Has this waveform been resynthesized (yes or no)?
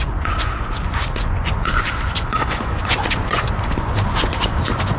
yes